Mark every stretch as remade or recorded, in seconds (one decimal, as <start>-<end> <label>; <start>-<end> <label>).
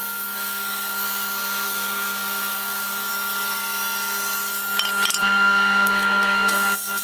0.0-3.1 remade; 3.1-5.2 recorded; 5.2-7.0 remade